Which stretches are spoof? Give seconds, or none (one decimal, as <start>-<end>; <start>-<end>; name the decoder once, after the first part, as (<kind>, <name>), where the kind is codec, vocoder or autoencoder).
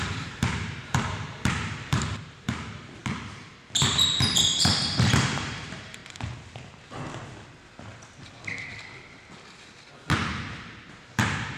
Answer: 0.0-3.0 (vocoder, BigVGAN v2); 4.3-6.0; 10.9-11.6